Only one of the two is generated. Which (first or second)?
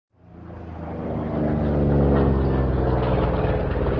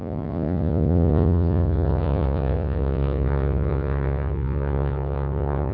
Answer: second